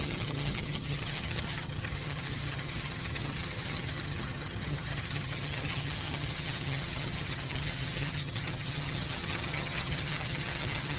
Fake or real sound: fake